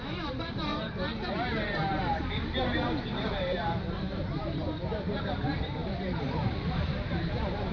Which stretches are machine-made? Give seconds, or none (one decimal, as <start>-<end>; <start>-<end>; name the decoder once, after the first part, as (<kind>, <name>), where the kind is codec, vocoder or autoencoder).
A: 0.0-0.7 (vocoder, BigVGAN v2); 1.3-7.7